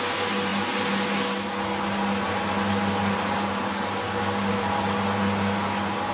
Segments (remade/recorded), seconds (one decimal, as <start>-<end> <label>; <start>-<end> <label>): 0.0-6.1 recorded